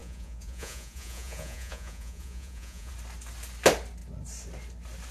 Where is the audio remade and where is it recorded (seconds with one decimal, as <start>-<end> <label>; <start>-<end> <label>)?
0.0-2.9 remade; 2.9-5.1 recorded